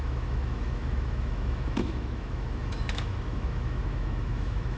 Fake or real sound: fake